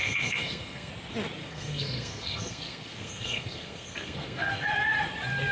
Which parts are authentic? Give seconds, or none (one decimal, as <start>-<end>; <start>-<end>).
0.9-1.4; 4.7-5.5